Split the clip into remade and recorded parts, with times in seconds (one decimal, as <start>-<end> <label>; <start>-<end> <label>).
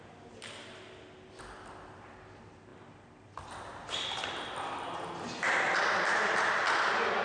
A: 0.0-7.2 recorded